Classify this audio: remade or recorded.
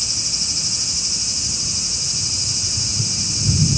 recorded